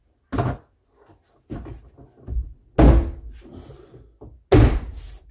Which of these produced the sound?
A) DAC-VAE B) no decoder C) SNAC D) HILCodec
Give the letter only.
B